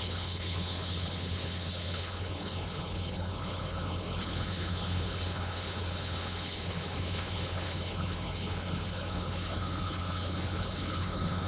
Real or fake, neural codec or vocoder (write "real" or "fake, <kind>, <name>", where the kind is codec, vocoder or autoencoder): fake, codec, HILCodec